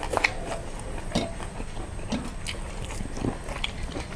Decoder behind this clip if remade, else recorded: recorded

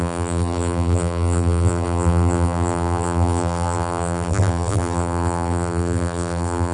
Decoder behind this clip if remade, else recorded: remade, vocoder, BigVGAN v2